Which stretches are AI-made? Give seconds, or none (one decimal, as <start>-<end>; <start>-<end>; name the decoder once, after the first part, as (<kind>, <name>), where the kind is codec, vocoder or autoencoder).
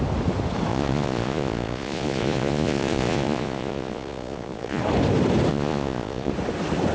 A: 0.7-4.8 (vocoder, Vocos); 5.5-6.3